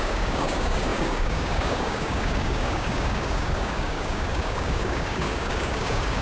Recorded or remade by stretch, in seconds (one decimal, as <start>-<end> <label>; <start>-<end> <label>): 0.0-6.2 remade